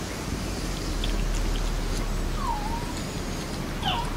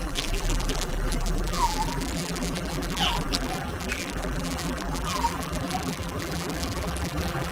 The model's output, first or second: second